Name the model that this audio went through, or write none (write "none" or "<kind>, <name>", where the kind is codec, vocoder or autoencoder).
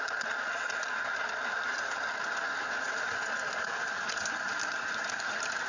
none